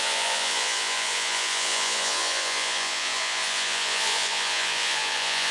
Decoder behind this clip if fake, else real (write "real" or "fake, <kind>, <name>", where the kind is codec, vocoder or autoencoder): fake, vocoder, Vocos